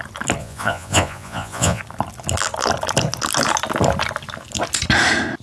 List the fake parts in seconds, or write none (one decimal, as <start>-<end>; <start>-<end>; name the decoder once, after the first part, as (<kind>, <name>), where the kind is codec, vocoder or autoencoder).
0.4-1.8 (vocoder, Vocos)